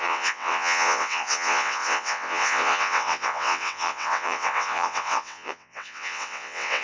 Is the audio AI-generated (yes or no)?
yes